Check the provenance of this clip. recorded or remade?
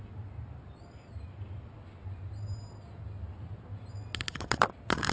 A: recorded